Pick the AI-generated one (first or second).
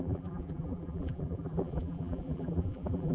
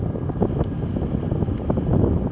first